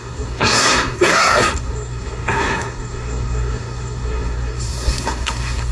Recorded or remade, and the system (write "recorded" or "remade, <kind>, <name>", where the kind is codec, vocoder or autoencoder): remade, codec, SNAC